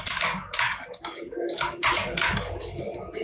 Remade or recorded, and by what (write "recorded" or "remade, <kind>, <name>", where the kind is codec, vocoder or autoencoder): remade, codec, DAC